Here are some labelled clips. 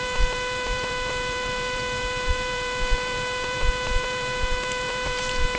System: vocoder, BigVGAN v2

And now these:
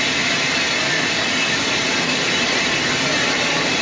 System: vocoder, BigVGAN v2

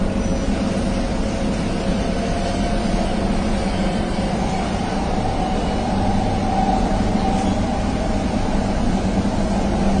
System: none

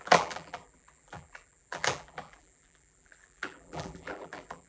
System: vocoder, BigVGAN v2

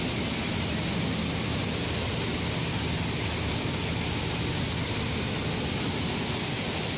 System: none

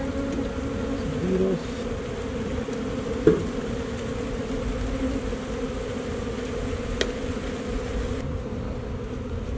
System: none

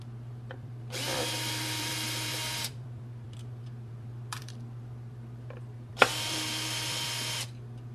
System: vocoder, BigVGAN v2